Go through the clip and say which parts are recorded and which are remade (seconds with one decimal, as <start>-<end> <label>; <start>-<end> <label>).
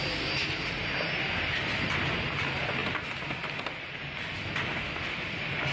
0.0-5.7 recorded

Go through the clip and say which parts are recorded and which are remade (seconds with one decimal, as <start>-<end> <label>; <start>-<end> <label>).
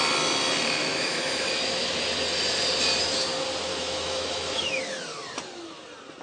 0.0-0.8 recorded; 0.8-1.5 remade; 1.5-3.7 recorded; 3.7-4.8 remade; 4.8-6.2 recorded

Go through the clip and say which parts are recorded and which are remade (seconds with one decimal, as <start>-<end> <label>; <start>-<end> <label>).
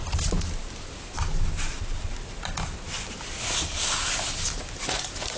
0.0-5.4 recorded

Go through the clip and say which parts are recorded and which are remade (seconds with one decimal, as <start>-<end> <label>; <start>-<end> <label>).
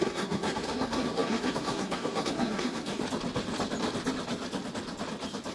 0.0-3.0 remade; 3.0-5.5 recorded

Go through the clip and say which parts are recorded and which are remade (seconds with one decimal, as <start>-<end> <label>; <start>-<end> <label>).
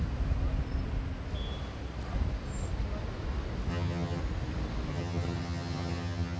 0.0-3.7 recorded; 3.7-4.2 remade; 4.2-4.9 recorded; 4.9-6.4 remade